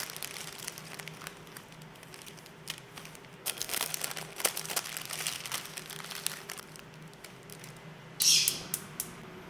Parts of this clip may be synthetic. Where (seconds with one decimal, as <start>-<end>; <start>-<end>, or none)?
3.4-3.9